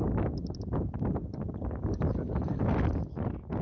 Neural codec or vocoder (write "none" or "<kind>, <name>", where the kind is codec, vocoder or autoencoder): none